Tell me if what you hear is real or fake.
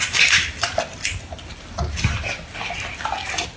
real